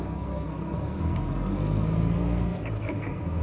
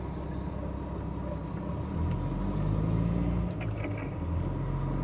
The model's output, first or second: first